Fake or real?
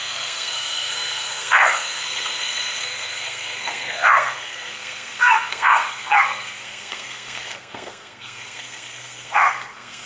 fake